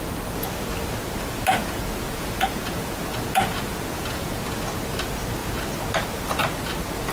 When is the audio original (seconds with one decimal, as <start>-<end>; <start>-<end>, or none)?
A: 0.0-1.5; 4.4-7.1